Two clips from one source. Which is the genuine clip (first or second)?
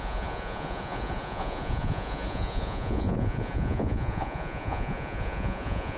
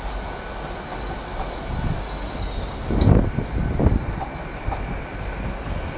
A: second